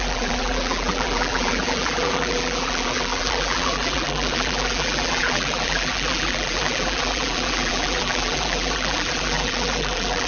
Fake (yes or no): yes